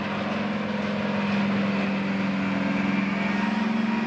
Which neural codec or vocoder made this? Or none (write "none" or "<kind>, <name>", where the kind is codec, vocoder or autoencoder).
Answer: none